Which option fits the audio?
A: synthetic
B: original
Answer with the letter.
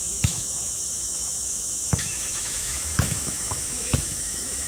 A